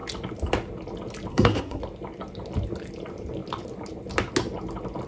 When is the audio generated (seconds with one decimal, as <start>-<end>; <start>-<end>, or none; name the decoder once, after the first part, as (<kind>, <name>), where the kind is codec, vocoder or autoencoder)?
1.3-1.8 (codec, SNAC)